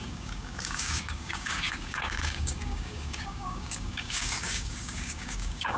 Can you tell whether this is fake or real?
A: fake